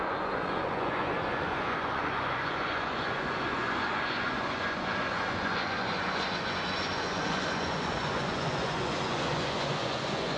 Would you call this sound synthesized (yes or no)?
yes